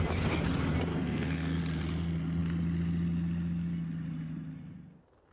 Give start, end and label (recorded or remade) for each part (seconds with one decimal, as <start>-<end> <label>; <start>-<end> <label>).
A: 0.0-0.9 recorded; 0.9-1.6 remade; 1.6-5.3 recorded